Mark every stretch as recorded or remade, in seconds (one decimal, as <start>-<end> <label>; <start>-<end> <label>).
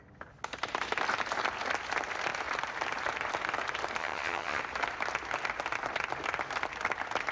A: 0.0-4.0 recorded; 4.0-4.6 remade; 4.6-7.3 recorded